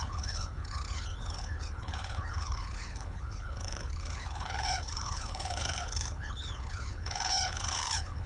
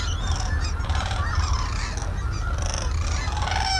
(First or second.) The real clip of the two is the second